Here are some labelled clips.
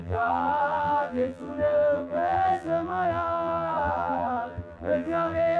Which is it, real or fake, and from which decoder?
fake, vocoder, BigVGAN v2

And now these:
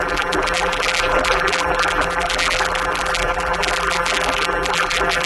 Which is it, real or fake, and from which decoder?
fake, vocoder, BigVGAN v2